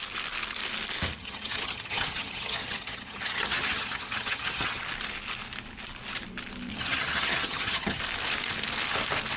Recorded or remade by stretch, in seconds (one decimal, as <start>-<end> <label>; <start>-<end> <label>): 0.0-1.2 recorded; 1.2-4.8 remade; 4.8-6.7 recorded; 6.7-8.0 remade; 8.0-9.4 recorded